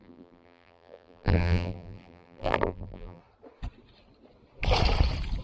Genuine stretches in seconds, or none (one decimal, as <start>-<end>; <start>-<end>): 3.2-5.4